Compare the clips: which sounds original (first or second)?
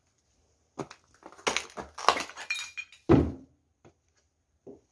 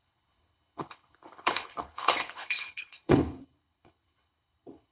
first